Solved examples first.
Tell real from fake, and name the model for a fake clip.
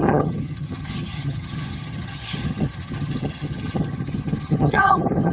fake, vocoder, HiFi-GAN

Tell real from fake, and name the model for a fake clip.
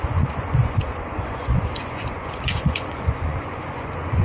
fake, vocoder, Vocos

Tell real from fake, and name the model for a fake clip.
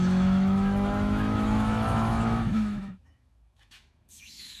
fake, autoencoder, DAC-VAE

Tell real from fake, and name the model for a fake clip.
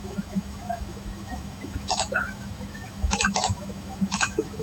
fake, autoencoder, DAC-VAE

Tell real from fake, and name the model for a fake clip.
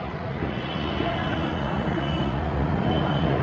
fake, vocoder, Vocos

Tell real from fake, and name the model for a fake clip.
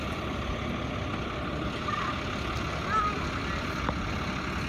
real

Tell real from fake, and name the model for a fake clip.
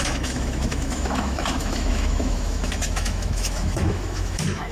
fake, autoencoder, DAC-VAE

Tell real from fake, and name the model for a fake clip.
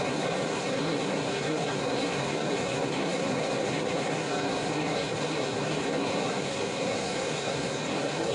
fake, codec, SNAC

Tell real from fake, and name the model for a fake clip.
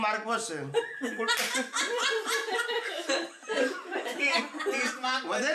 real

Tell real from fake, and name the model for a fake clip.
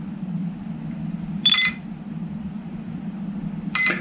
real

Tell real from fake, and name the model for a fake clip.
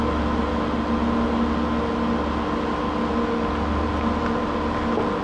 real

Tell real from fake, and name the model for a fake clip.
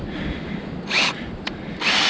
real